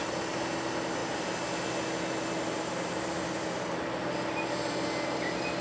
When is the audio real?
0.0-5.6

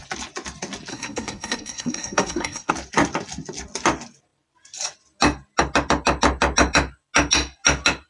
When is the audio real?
0.0-0.9; 2.7-8.1